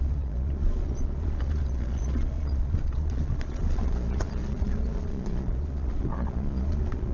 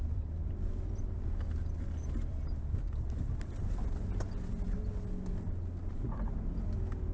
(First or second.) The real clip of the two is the second